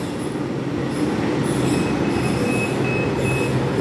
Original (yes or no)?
yes